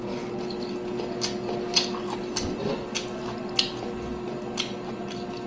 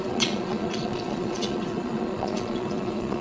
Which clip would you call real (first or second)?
first